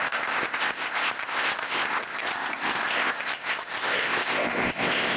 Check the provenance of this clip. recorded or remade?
remade